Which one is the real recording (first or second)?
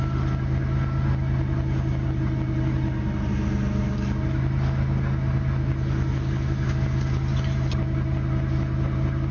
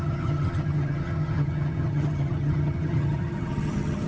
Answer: first